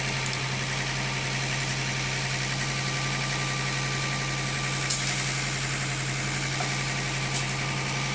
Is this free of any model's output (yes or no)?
yes